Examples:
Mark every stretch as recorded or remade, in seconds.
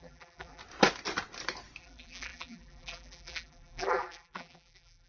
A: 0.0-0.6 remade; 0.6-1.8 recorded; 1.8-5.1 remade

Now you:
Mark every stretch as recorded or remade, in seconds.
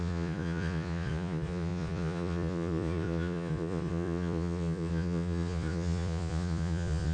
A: 0.0-7.1 remade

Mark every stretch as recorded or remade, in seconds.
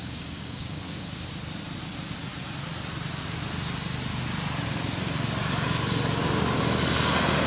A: 0.0-1.3 remade; 1.3-7.5 recorded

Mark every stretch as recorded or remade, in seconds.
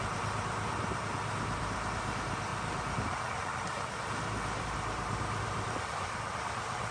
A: 0.0-2.5 remade; 2.5-4.6 recorded; 4.6-6.9 remade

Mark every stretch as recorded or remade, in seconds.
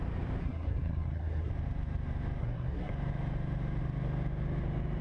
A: 0.0-0.4 recorded; 0.4-1.5 remade; 1.5-2.4 recorded; 2.4-2.9 remade; 2.9-5.0 recorded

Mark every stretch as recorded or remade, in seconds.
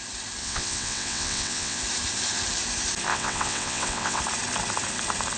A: 0.0-0.4 recorded; 0.4-1.8 remade; 1.8-3.1 recorded; 3.1-4.2 remade; 4.2-5.4 recorded